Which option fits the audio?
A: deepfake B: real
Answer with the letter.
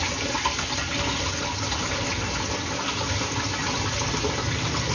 B